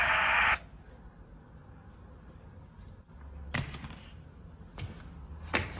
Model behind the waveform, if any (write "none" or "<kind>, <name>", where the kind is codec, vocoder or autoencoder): none